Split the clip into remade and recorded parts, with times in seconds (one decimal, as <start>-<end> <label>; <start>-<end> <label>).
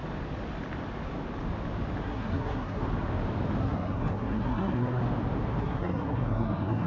0.0-2.0 recorded; 2.0-2.8 remade; 2.8-3.6 recorded; 3.6-5.0 remade; 5.0-5.6 recorded; 5.6-6.9 remade